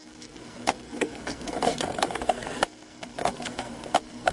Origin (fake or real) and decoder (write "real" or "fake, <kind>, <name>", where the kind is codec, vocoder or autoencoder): fake, codec, SNAC